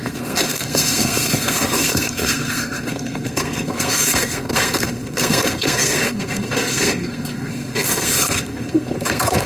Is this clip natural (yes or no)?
no